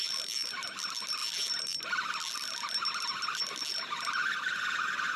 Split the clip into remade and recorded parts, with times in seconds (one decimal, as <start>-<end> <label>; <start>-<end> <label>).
0.0-1.2 recorded; 1.2-2.1 remade; 2.1-5.2 recorded